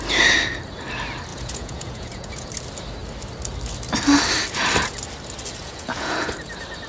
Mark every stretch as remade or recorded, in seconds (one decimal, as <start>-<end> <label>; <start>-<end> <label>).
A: 0.0-1.3 recorded; 1.3-2.5 remade; 2.5-5.5 recorded; 5.5-6.3 remade; 6.3-6.9 recorded